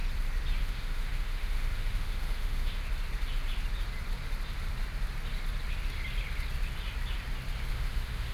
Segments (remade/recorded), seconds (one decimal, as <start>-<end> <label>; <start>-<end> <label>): 0.0-0.6 recorded; 0.6-2.8 remade; 2.8-7.7 recorded; 7.7-8.3 remade